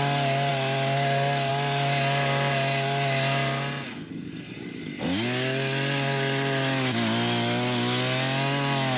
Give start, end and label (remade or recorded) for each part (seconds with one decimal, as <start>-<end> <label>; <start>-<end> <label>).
0.0-9.0 recorded